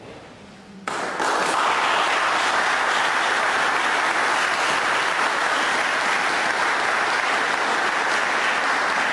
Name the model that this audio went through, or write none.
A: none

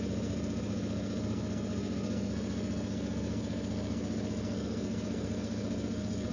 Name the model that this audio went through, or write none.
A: codec, SNAC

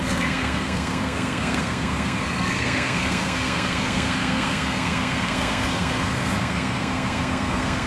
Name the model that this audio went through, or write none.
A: codec, SNAC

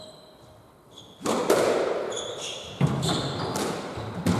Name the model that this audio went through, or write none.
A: none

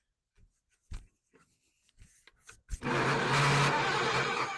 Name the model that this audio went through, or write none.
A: none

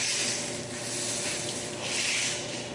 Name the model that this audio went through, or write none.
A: none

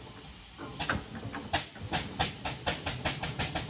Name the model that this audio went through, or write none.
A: none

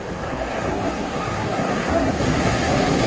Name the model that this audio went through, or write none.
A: codec, SNAC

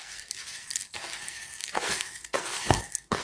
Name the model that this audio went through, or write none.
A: codec, SNAC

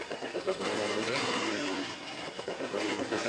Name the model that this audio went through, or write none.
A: codec, SNAC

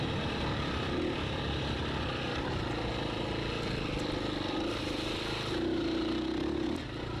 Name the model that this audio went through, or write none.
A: none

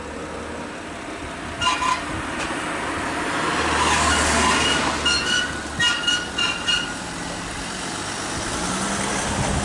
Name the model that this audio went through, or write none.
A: none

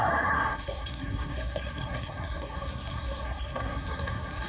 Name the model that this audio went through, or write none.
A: codec, SNAC